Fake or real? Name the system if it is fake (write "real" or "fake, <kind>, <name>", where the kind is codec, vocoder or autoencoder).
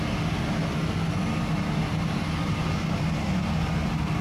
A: real